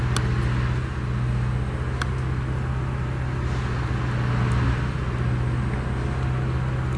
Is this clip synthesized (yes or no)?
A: no